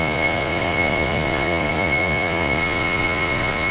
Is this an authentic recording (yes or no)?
no